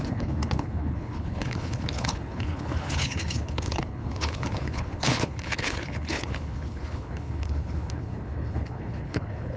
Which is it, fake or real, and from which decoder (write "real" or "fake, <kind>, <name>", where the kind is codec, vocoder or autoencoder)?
fake, codec, HILCodec